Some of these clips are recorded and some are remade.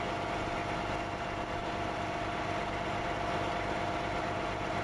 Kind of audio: recorded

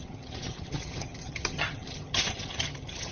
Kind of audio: remade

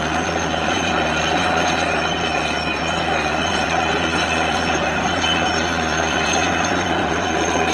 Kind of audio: remade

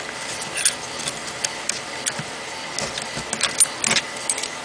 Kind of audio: recorded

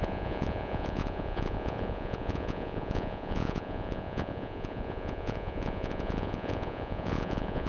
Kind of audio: remade